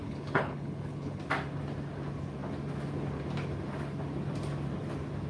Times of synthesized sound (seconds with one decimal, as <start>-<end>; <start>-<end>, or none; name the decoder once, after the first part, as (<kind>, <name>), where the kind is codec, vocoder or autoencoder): 0.0-1.2 (codec, HILCodec)